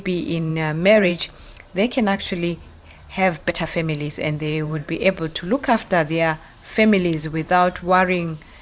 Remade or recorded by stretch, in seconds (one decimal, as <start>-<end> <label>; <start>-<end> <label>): 0.0-4.8 remade; 4.8-7.2 recorded; 7.2-8.6 remade